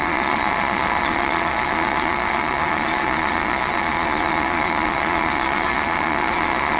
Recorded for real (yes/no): no